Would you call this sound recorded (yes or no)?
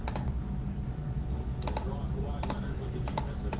yes